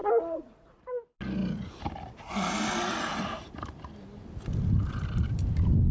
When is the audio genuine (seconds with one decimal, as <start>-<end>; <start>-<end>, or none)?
0.8-5.9